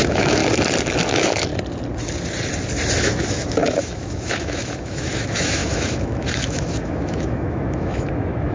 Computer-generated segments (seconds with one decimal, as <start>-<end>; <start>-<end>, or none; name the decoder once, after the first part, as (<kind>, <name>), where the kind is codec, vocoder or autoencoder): 0.0-0.4 (autoencoder, DAC-VAE); 1.1-1.5; 3.0-8.5